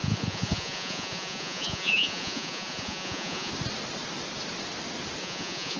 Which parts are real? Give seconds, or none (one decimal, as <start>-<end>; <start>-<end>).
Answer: 3.5-5.2